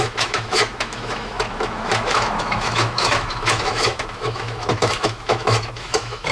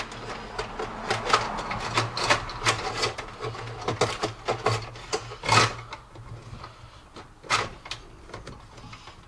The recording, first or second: second